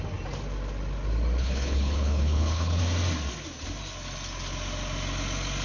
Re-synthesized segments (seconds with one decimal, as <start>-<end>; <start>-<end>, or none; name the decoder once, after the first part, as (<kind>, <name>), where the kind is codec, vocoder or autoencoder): 1.4-2.8 (codec, HILCodec)